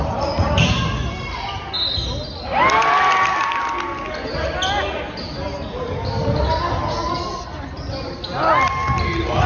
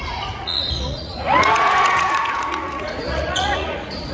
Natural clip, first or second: first